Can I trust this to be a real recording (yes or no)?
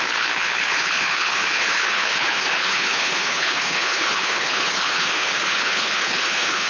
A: no